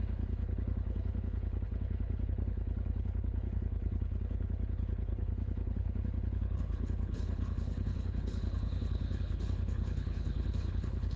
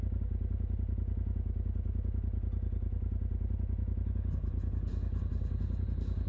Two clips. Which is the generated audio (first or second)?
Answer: first